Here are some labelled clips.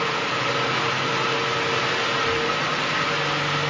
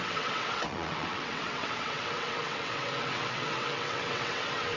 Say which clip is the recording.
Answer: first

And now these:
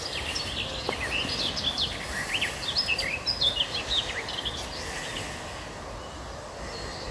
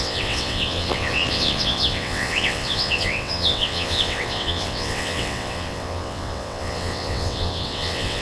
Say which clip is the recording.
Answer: first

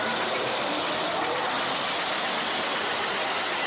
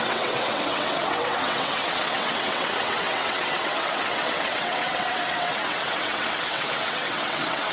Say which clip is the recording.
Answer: first